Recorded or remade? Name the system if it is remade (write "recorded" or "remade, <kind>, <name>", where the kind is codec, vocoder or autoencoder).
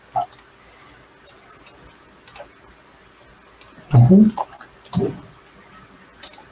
recorded